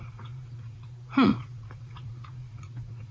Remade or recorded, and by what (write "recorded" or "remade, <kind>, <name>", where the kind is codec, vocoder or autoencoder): remade, vocoder, Vocos